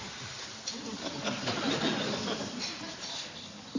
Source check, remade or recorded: recorded